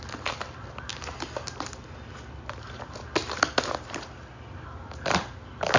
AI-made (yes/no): no